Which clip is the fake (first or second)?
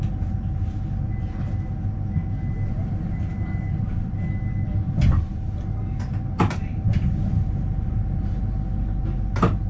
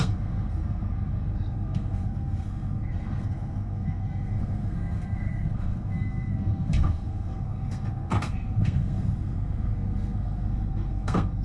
second